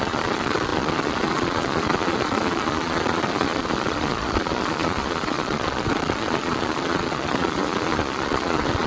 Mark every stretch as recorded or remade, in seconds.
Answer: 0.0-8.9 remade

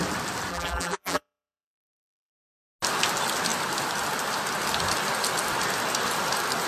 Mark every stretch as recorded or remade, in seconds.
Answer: 0.0-0.5 recorded; 0.5-2.3 remade; 2.3-6.7 recorded

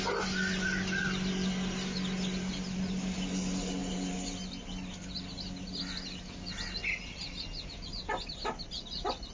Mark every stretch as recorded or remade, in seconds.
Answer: 0.0-9.3 recorded

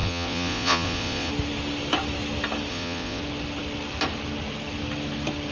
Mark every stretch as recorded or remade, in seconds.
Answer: 0.0-1.3 remade; 1.3-2.7 recorded; 2.7-3.2 remade; 3.2-5.5 recorded